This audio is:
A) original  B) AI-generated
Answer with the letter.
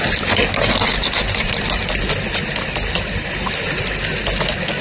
A